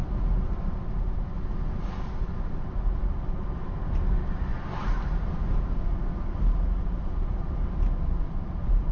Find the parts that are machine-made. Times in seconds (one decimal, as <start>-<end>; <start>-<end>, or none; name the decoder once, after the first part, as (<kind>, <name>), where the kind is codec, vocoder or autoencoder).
none